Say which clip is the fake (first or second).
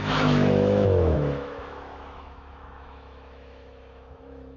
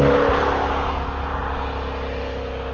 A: first